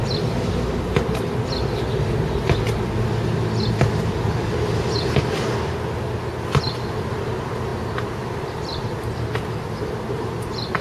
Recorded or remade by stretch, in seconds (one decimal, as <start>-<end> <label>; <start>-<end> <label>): 0.0-10.8 recorded